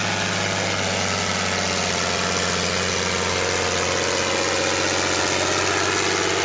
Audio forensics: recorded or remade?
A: recorded